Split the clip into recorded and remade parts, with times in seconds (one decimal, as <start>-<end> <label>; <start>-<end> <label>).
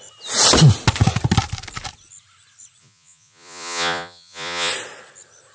0.0-2.8 recorded; 2.8-4.7 remade; 4.7-5.5 recorded